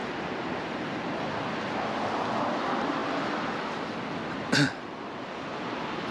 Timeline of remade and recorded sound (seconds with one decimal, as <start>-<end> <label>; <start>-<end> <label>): 0.0-1.7 remade; 1.7-3.0 recorded; 3.0-6.1 remade